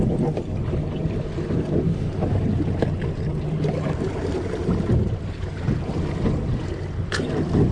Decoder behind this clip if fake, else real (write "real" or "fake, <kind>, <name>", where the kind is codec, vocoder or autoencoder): real